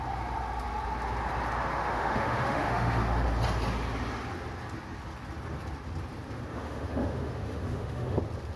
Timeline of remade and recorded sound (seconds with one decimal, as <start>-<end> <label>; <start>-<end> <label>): 0.0-1.7 recorded; 1.7-3.0 remade; 3.0-6.5 recorded; 6.5-8.2 remade; 8.2-8.6 recorded